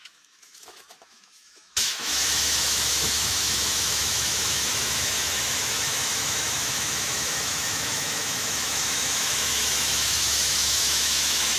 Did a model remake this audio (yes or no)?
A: yes